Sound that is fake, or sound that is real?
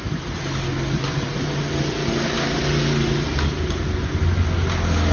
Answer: real